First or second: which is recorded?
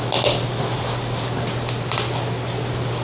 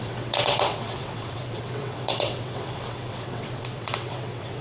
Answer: first